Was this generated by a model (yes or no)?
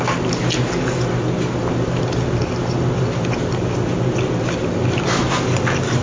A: no